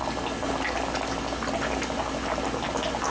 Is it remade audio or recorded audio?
recorded